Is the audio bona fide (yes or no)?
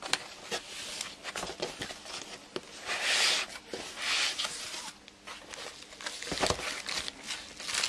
yes